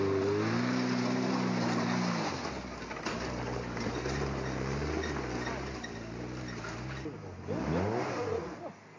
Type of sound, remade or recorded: recorded